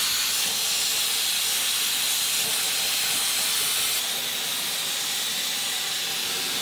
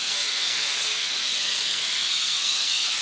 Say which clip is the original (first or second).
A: first